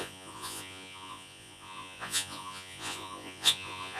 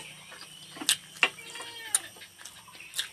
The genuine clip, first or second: second